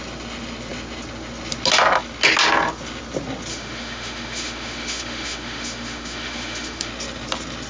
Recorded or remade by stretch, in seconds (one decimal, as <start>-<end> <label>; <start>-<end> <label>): 0.0-3.5 recorded; 3.5-6.9 remade; 6.9-7.7 recorded